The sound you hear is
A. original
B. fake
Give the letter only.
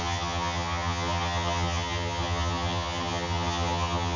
B